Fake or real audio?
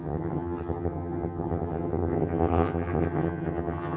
fake